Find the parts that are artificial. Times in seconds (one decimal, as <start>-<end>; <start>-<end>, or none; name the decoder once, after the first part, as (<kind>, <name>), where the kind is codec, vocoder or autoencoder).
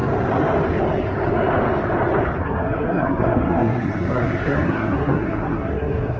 2.4-6.2 (codec, SNAC)